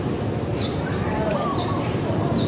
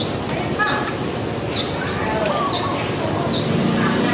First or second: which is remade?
first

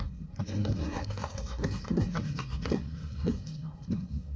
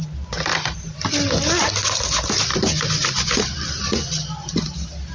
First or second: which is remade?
first